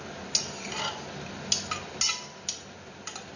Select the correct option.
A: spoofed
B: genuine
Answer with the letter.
B